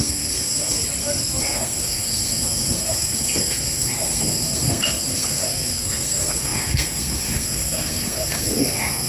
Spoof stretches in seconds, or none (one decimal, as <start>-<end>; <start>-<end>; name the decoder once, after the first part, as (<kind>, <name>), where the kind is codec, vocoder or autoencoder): 0.0-0.8 (codec, SNAC); 1.4-9.1